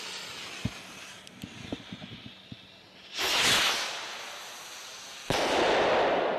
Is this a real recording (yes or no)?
yes